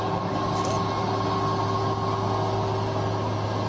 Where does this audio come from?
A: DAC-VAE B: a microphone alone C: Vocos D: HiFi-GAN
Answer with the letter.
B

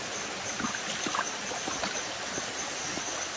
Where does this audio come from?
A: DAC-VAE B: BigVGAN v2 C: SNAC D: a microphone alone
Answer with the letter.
D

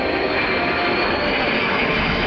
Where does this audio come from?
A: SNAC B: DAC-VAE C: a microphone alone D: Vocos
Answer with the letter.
C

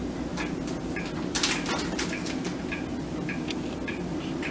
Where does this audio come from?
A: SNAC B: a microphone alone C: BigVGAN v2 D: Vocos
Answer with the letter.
B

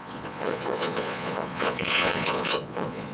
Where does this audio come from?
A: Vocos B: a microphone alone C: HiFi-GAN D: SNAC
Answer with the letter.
A